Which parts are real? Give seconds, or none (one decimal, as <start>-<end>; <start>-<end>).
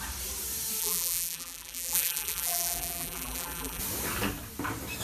0.0-0.8; 3.8-5.0